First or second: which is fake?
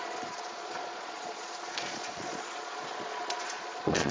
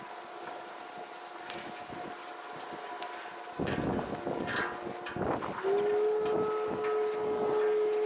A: first